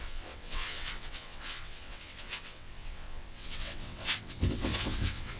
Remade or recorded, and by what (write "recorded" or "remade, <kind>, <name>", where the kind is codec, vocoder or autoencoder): remade, vocoder, WaveNeXt